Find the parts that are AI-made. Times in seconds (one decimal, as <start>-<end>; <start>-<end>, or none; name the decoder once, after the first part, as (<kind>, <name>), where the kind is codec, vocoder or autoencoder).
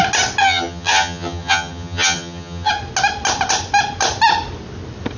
0.4-2.7 (vocoder, HiFi-GAN)